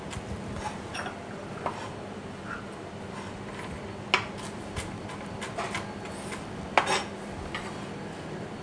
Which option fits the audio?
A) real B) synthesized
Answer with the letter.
A